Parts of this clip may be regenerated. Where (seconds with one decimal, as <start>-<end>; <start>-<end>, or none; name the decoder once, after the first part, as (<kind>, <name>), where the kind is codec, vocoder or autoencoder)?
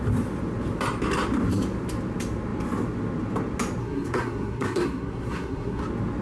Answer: 3.8-5.8 (codec, SNAC)